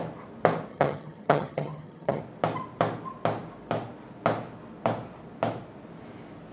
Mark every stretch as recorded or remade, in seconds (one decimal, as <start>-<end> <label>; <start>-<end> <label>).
0.0-0.7 recorded; 0.7-2.2 remade; 2.2-6.5 recorded